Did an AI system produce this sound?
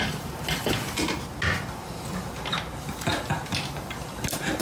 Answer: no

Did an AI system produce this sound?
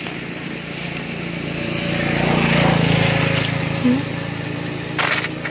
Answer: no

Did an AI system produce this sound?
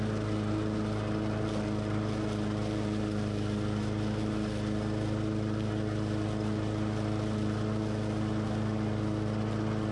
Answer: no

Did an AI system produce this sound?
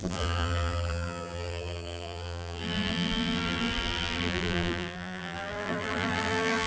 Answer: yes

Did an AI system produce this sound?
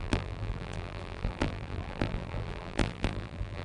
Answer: yes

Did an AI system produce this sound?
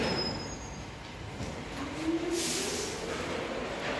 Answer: no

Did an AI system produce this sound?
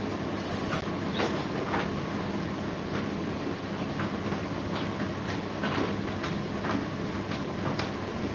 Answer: no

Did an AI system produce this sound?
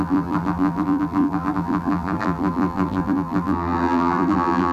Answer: yes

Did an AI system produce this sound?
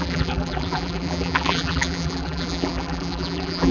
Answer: yes